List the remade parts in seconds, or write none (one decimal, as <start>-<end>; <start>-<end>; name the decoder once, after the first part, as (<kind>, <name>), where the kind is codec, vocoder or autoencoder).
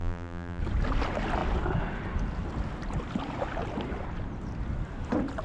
0.0-0.6 (vocoder, BigVGAN v2)